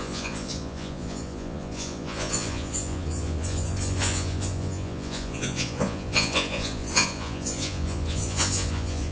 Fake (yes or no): yes